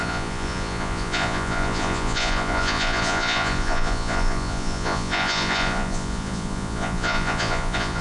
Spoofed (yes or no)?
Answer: yes